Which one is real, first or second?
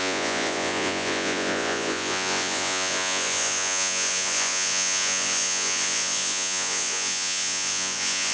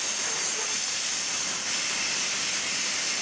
second